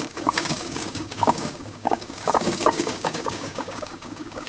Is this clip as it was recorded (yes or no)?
no